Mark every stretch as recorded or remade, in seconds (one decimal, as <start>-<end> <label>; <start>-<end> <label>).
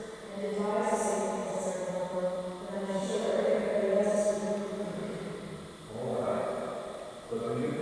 0.0-1.4 recorded; 1.4-4.2 remade; 4.2-5.0 recorded; 5.0-5.7 remade; 5.7-7.8 recorded